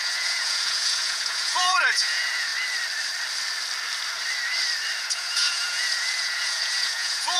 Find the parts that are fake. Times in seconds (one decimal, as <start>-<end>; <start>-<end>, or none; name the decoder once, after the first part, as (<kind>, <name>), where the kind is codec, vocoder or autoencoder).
0.0-2.5 (vocoder, Vocos); 5.0-7.4